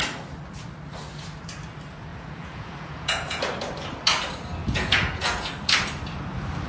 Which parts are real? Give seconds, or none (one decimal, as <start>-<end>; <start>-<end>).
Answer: 0.0-2.1; 3.4-4.6; 5.5-6.7